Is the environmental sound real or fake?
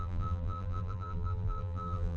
fake